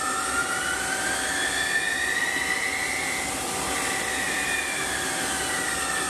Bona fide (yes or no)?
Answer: yes